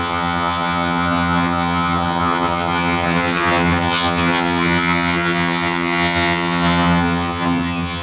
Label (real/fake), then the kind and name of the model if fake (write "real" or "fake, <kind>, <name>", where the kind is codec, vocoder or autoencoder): fake, vocoder, HiFi-GAN